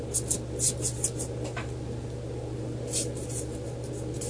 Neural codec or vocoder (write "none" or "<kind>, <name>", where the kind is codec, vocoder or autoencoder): none